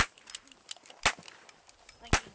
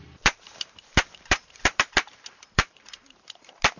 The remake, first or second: second